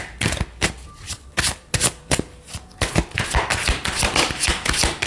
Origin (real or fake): real